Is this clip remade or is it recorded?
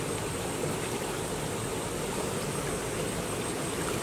recorded